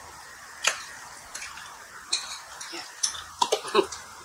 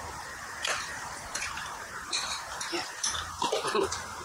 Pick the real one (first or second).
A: first